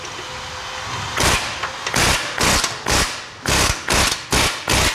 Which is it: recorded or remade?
recorded